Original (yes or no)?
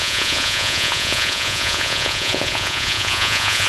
no